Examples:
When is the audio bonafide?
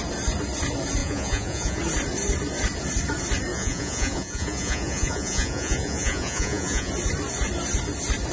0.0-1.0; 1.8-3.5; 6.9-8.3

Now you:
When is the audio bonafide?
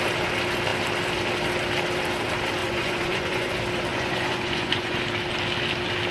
0.0-2.6; 3.5-3.9; 5.0-6.1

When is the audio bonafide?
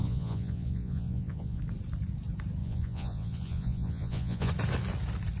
1.6-2.6; 4.5-5.4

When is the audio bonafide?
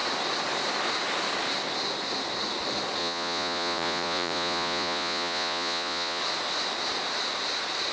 0.0-3.0; 6.2-7.9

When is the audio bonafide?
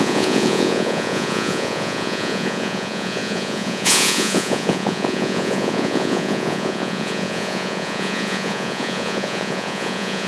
none